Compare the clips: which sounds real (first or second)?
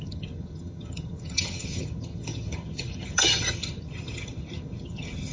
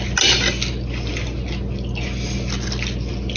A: second